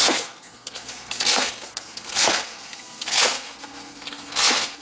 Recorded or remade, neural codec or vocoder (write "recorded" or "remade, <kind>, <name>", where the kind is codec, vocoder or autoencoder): remade, codec, SNAC